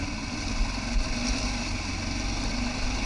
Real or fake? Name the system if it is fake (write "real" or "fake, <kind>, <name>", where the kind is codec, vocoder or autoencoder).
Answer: real